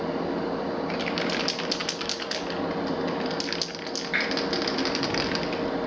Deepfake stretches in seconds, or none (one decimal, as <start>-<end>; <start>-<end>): none